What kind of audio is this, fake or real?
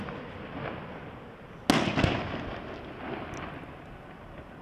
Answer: real